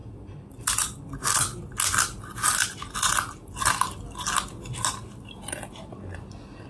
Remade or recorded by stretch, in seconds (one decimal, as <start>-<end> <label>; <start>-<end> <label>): 0.0-6.7 recorded